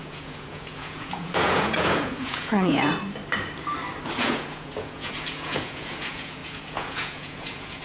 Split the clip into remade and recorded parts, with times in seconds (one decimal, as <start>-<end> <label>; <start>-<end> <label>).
0.0-2.9 remade; 2.9-4.2 recorded; 4.2-7.8 remade